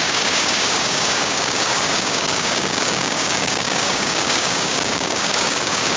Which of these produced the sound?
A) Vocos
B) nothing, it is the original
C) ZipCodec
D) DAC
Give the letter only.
D